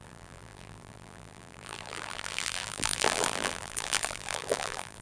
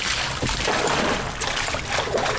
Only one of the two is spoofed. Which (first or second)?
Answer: first